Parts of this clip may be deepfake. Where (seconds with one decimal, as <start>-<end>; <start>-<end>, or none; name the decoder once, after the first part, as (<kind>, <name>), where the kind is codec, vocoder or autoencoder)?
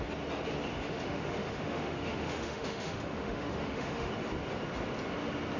0.7-4.1 (autoencoder, DAC-VAE)